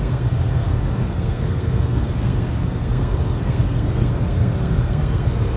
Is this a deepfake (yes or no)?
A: yes